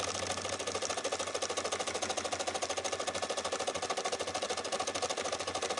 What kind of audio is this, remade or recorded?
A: recorded